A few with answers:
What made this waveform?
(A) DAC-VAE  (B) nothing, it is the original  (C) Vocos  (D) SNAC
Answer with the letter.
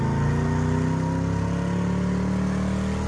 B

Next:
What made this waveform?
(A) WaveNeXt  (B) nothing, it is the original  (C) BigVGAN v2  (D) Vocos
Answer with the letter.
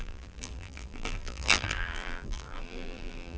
C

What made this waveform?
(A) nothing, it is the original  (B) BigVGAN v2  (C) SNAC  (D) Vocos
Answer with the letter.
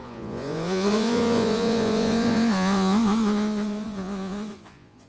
D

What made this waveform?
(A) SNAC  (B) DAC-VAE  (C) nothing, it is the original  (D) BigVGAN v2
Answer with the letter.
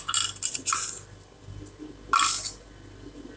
C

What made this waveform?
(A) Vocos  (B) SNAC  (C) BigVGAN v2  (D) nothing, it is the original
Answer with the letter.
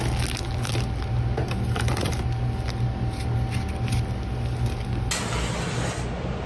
D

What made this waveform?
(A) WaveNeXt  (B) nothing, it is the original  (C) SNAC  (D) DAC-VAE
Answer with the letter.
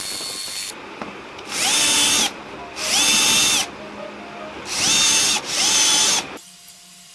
B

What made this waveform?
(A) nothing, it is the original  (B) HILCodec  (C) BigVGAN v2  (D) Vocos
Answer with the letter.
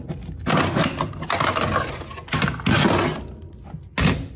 A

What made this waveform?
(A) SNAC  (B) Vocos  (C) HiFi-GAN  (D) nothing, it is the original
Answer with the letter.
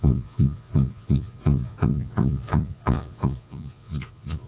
B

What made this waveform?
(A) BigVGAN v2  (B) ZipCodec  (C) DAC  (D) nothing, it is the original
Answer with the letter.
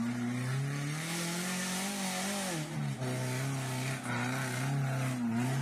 D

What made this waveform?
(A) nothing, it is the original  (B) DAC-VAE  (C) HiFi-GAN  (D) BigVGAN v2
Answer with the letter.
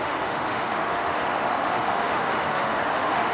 B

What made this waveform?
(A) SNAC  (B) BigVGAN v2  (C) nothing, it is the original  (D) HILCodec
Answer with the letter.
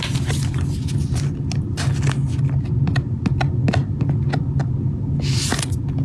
C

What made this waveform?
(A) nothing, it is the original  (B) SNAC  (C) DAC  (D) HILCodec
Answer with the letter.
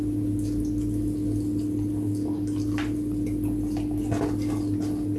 A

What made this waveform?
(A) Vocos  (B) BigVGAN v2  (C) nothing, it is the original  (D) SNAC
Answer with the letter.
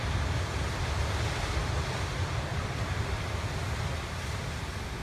C